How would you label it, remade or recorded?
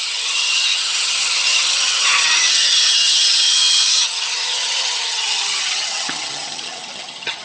remade